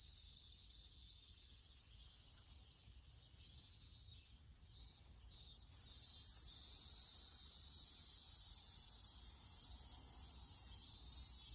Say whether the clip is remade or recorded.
recorded